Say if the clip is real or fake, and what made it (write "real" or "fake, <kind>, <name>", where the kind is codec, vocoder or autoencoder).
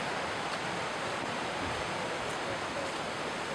real